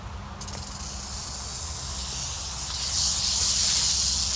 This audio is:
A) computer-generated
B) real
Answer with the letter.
B